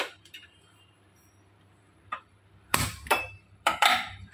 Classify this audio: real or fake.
fake